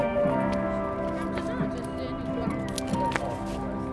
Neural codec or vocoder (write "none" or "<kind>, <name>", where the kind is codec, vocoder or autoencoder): none